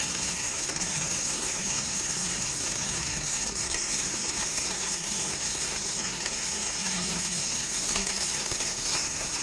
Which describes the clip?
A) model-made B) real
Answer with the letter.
A